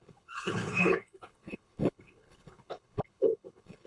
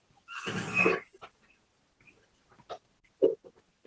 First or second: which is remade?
first